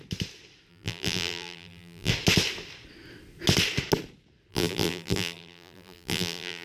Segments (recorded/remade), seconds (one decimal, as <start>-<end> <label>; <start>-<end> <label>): 0.0-0.7 recorded; 0.7-2.1 remade; 2.1-4.5 recorded; 4.5-6.6 remade